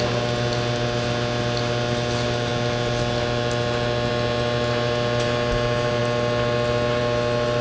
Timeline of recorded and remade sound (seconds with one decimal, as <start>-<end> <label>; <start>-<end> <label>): 0.0-7.6 recorded